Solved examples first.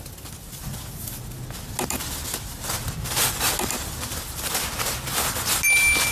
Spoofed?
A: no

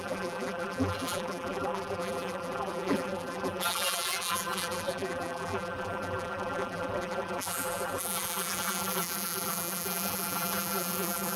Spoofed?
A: yes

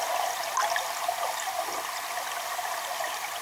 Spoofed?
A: yes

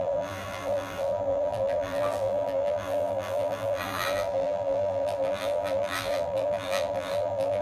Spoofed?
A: yes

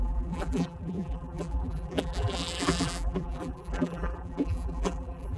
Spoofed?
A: yes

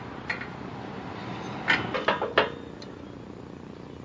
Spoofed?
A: no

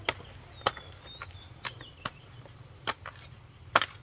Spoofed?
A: no